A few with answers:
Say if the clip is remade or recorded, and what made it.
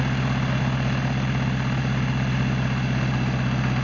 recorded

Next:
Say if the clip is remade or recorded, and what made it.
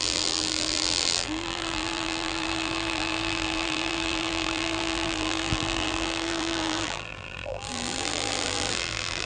remade, vocoder, BigVGAN v2